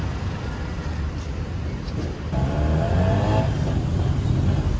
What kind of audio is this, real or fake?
real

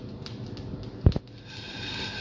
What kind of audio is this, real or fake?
real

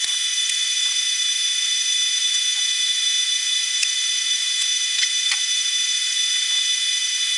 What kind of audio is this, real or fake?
fake